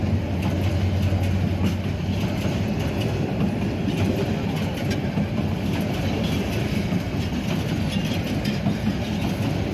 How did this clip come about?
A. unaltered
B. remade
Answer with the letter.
A